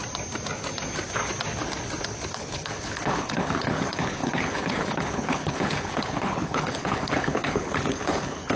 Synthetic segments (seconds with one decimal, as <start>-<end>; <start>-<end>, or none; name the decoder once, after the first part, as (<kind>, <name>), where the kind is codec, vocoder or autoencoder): 2.3-8.6 (codec, HILCodec)